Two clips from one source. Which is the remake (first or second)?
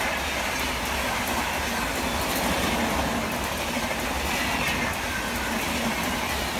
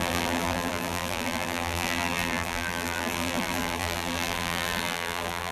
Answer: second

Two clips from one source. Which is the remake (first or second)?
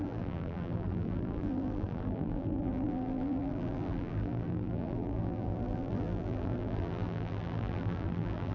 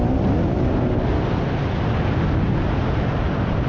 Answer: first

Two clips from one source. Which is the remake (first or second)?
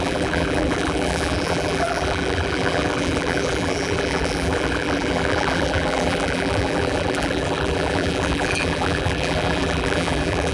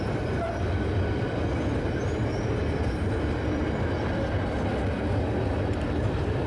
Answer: first